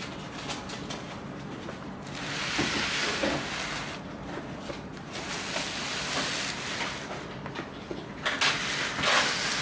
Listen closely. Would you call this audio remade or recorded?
recorded